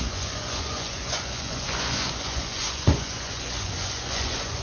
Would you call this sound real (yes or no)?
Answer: no